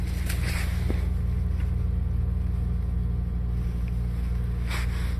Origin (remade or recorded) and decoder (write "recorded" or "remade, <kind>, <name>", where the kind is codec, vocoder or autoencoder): recorded